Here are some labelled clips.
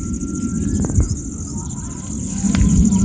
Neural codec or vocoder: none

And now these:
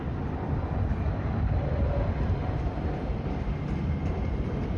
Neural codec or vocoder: vocoder, BigVGAN v2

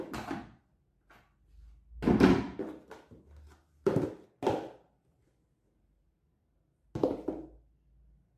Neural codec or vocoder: none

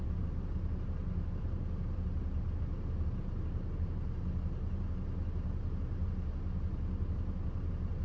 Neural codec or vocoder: none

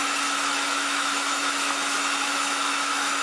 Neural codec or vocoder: autoencoder, DAC-VAE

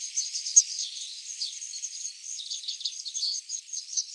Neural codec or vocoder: codec, HILCodec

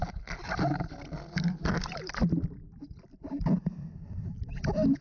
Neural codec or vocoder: none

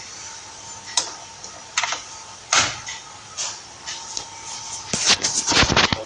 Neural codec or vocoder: none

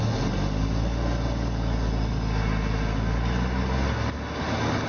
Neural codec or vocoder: none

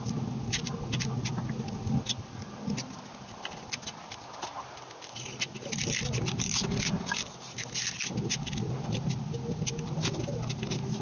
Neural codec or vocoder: none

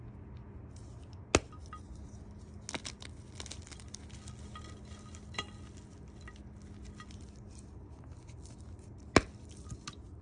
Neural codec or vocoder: none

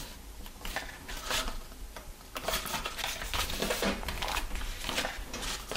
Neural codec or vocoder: none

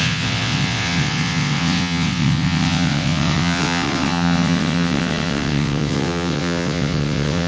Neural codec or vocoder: vocoder, WaveNeXt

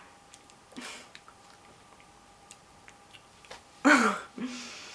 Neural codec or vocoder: none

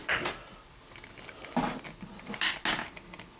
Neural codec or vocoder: none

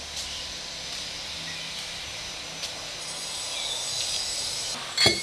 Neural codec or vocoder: none